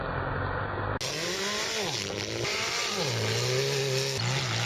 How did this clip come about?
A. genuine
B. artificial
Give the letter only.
A